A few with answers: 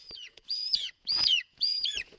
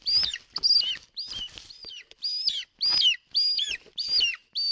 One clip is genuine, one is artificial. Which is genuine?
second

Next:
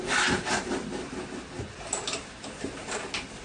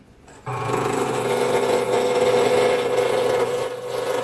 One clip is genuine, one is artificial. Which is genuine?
first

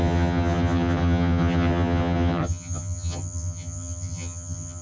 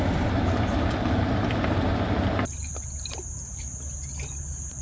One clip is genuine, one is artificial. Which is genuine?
second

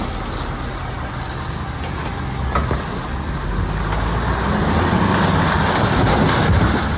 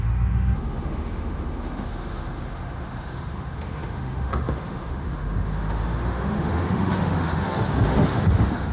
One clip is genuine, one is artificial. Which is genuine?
first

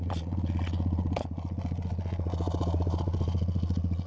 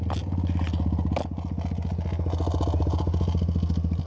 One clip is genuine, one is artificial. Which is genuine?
second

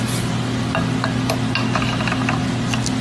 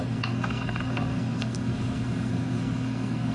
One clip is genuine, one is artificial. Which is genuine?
first